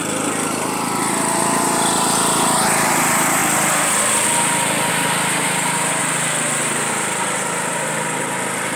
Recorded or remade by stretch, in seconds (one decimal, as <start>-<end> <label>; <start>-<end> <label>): 0.0-3.4 remade; 3.4-4.9 recorded; 4.9-8.8 remade